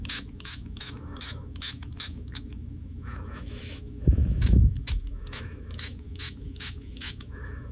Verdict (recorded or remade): remade